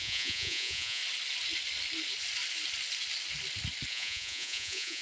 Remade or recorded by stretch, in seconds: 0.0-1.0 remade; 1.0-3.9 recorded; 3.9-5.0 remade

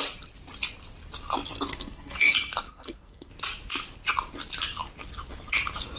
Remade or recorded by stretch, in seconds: 0.0-1.7 recorded; 1.7-2.3 remade; 2.3-2.7 recorded; 2.7-3.3 remade; 3.3-6.0 recorded

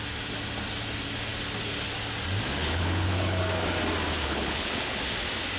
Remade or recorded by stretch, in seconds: 0.0-2.6 recorded; 2.6-3.4 remade; 3.4-4.2 recorded; 4.2-5.0 remade; 5.0-5.6 recorded

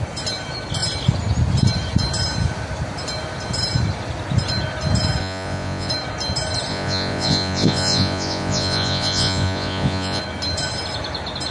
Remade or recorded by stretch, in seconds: 0.0-5.2 recorded; 5.2-5.9 remade; 5.9-6.7 recorded; 6.7-10.2 remade; 10.2-11.5 recorded

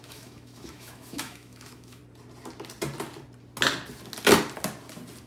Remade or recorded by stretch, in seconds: 0.0-2.0 remade; 2.0-5.3 recorded